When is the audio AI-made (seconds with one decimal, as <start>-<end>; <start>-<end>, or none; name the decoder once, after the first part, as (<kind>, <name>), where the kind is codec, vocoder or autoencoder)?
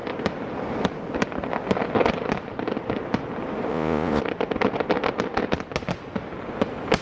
3.7-4.2 (vocoder, Vocos)